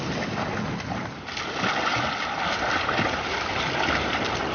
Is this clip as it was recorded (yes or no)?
yes